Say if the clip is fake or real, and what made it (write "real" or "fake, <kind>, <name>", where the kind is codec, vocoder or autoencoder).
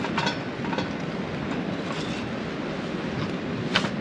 real